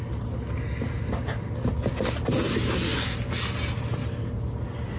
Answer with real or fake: real